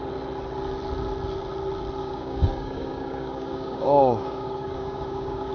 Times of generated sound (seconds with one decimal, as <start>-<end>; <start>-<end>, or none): 2.0-5.5